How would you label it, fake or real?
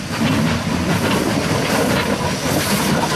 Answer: real